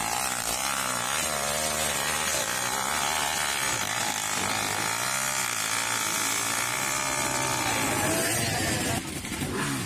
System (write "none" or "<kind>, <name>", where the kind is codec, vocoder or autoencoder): none